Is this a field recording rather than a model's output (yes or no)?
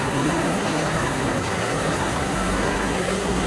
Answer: no